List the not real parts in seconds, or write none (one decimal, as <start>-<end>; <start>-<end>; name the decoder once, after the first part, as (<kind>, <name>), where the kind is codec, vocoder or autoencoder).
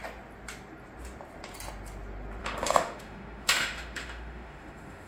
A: 2.4-5.1 (autoencoder, DAC-VAE)